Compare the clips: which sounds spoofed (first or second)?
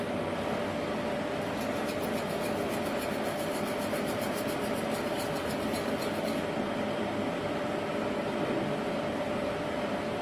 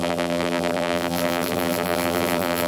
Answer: second